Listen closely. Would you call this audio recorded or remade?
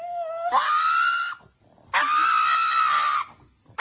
recorded